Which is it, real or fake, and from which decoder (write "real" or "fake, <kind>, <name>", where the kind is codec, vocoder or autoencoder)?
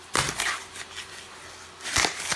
real